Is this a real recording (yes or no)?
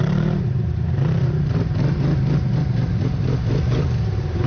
no